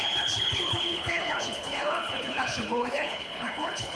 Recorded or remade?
remade